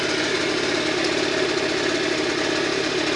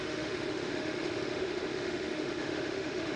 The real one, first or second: first